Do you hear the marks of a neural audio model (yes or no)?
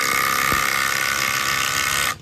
no